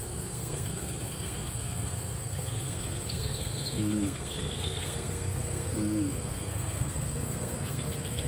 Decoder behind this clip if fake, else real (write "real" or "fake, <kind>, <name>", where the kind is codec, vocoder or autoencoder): fake, codec, SNAC